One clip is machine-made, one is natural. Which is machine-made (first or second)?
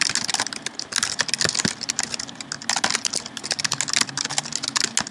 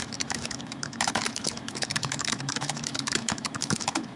second